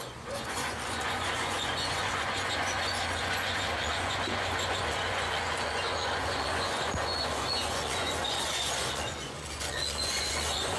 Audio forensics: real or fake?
fake